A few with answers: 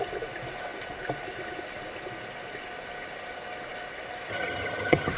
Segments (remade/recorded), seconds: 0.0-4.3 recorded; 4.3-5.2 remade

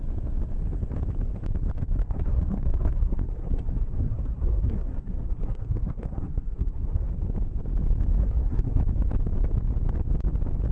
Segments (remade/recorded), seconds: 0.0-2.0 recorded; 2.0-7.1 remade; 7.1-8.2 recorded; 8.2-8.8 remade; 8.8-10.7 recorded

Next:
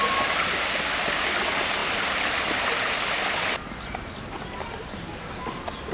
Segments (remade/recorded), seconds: 0.0-5.9 recorded